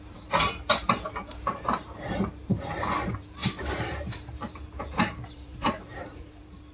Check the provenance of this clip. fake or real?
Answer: fake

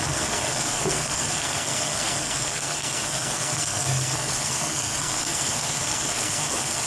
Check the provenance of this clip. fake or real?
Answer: fake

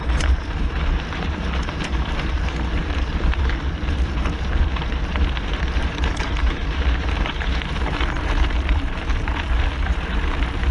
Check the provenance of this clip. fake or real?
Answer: fake